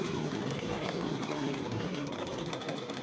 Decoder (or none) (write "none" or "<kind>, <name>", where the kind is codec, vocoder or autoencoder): codec, SNAC